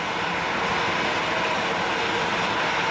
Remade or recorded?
recorded